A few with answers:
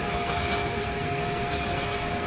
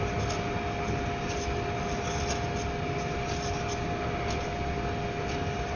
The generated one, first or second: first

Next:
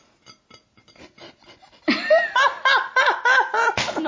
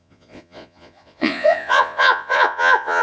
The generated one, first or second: second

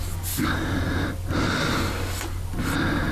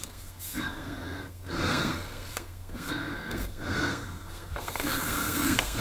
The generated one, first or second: second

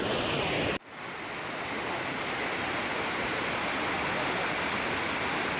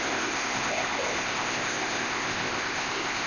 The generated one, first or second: second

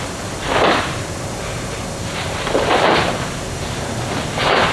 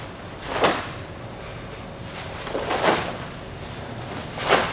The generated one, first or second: first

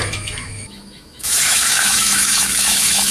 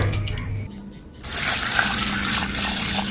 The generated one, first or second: first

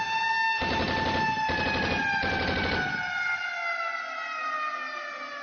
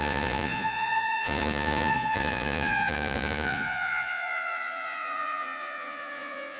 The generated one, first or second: second